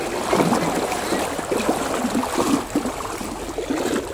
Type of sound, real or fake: real